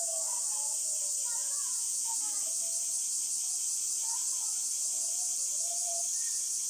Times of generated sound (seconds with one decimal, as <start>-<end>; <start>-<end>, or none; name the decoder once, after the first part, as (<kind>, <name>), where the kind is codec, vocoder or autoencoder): 1.4-2.4 (vocoder, Vocos)